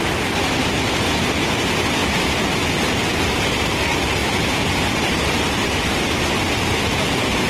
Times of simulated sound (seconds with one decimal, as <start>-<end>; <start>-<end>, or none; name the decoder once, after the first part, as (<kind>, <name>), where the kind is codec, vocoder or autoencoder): 2.0-2.9 (vocoder, BigVGAN v2); 4.2-6.2